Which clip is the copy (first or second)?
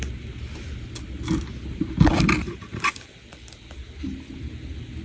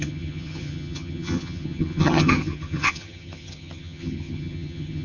second